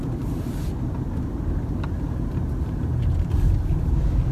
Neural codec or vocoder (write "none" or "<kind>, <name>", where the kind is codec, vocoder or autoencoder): none